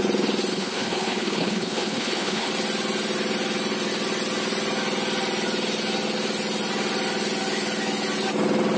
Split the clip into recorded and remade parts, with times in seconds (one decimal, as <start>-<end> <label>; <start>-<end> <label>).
0.0-0.5 recorded; 0.5-2.5 remade; 2.5-8.8 recorded